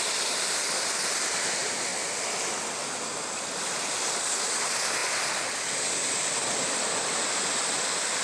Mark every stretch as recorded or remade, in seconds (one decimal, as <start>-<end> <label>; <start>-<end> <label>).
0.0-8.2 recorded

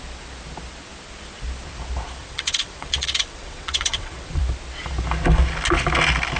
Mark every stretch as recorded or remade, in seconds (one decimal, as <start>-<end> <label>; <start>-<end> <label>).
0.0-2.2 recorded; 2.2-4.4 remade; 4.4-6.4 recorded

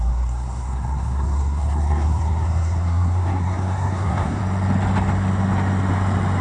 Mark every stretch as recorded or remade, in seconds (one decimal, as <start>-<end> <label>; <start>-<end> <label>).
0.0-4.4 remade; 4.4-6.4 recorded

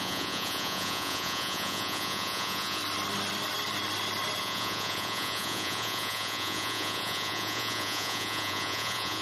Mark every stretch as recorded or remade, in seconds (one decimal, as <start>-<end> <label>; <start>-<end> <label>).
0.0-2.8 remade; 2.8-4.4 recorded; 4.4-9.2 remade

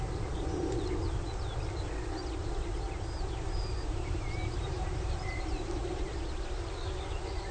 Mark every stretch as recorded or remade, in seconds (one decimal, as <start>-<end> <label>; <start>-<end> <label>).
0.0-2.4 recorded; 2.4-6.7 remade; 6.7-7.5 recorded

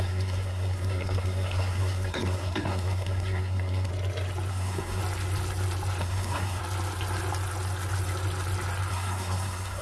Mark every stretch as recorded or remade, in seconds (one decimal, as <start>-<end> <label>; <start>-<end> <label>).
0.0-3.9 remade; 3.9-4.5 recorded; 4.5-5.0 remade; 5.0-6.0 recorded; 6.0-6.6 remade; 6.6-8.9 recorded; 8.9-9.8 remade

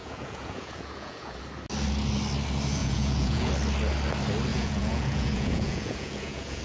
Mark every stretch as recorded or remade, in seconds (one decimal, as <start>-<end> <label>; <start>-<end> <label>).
0.0-1.4 remade; 1.4-2.8 recorded; 2.8-3.5 remade; 3.5-4.5 recorded; 4.5-6.6 remade